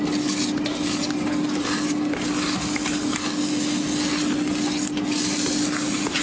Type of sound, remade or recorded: recorded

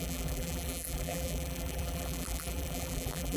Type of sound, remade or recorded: remade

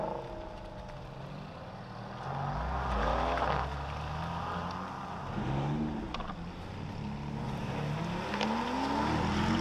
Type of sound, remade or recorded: recorded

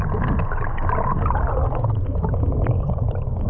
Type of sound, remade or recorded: recorded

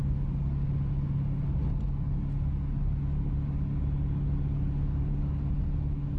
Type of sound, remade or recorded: recorded